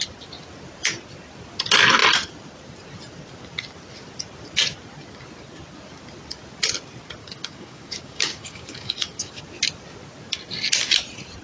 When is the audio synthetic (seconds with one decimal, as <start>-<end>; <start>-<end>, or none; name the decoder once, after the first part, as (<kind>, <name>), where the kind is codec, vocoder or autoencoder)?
7.2-9.4 (codec, DAC)